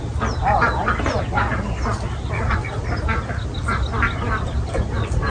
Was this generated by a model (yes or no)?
no